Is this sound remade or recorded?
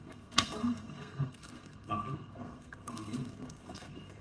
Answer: remade